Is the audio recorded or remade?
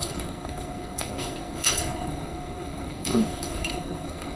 remade